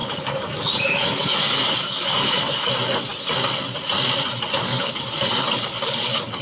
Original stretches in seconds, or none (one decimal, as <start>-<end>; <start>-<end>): 2.7-4.7